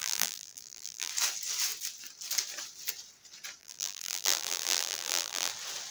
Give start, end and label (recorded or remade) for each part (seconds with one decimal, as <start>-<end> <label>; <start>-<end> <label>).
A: 0.0-1.1 remade; 1.1-3.6 recorded; 3.6-5.5 remade; 5.5-5.9 recorded